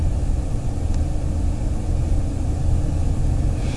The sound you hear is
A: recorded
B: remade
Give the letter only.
A